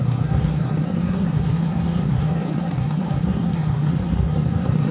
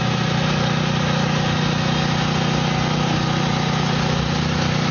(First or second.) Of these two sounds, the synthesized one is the first